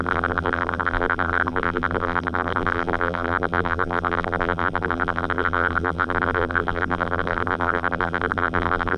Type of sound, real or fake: fake